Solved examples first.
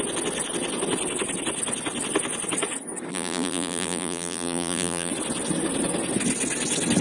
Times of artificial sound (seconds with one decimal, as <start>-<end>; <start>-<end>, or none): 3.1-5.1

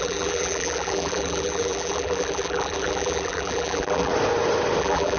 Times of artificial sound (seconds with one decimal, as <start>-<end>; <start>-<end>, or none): 0.0-4.1; 4.8-5.2

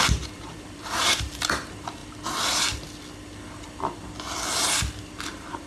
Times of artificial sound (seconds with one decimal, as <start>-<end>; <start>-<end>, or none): 0.0-2.0; 5.3-5.7

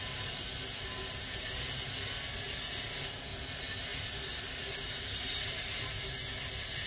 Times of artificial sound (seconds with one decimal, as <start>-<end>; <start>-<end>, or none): none

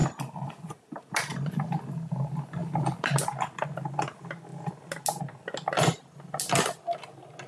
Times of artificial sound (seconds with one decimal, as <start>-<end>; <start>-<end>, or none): 0.0-0.5; 2.6-3.2

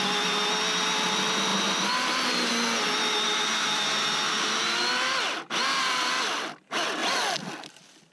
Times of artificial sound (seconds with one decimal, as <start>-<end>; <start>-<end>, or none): 1.5-2.5